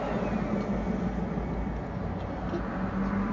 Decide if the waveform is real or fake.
real